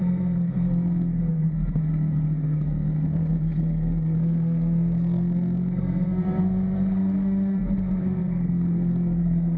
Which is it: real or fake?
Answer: fake